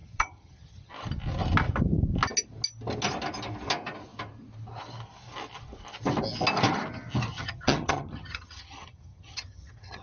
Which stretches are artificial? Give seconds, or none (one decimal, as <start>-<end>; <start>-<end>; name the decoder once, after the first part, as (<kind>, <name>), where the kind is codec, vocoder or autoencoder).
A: 0.0-0.9 (vocoder, HiFi-GAN); 7.3-10.0